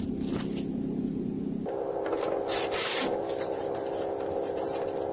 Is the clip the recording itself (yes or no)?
yes